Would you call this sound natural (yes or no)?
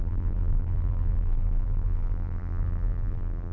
no